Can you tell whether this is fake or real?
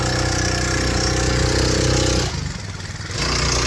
real